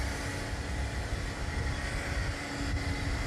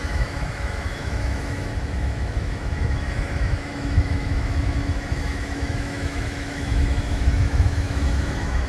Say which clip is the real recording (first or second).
first